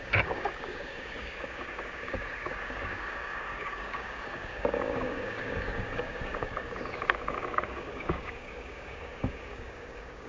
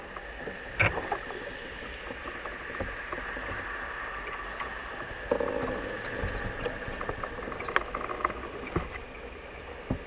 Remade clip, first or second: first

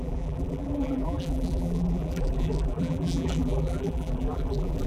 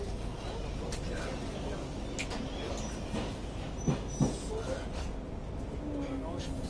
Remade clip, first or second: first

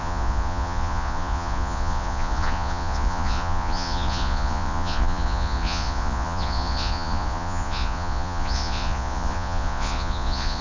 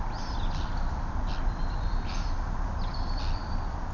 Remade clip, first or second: first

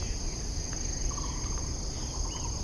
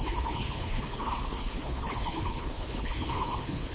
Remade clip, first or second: second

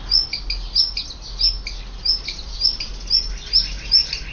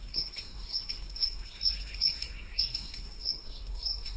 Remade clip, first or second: second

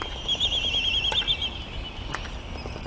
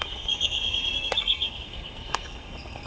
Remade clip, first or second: second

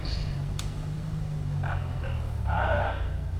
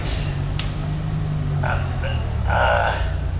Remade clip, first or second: first